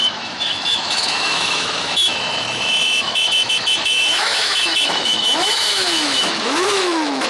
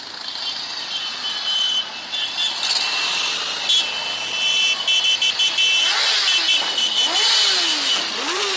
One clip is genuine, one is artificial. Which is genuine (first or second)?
second